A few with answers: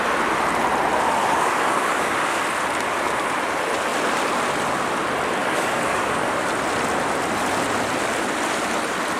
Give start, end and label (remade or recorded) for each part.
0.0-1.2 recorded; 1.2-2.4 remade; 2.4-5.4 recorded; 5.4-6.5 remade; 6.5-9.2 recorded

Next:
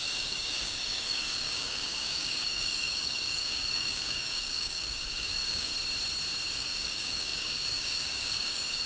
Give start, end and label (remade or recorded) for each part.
0.0-5.7 remade; 5.7-6.5 recorded; 6.5-8.9 remade

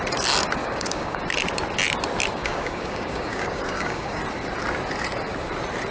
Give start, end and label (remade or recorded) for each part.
0.0-0.6 recorded; 0.6-1.2 remade; 1.2-2.4 recorded; 2.4-4.2 remade; 4.2-5.9 recorded

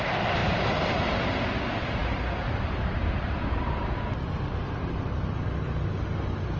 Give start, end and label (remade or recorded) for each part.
0.0-6.6 recorded